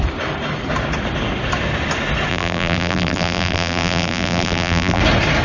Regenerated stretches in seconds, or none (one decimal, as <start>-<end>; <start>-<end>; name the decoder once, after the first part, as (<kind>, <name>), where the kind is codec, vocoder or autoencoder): 2.3-5.0 (vocoder, BigVGAN v2)